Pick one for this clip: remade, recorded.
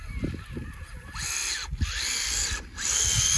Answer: recorded